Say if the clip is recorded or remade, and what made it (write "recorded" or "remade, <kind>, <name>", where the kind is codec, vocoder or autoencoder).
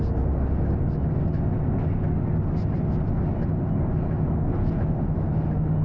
recorded